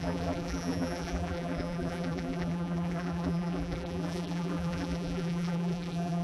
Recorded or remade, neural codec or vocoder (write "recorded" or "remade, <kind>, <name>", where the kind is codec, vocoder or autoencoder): remade, vocoder, BigVGAN v2